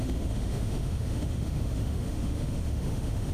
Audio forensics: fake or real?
fake